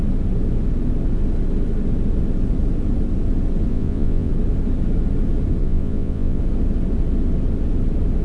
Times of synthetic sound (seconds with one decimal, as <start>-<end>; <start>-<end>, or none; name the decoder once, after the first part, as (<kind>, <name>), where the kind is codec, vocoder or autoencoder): 3.7-4.3 (vocoder, Vocos); 5.6-6.4